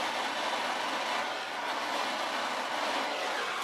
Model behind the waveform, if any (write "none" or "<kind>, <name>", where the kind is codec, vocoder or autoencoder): none